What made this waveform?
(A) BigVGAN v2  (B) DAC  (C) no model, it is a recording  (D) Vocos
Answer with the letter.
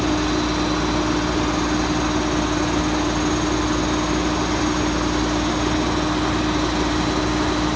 C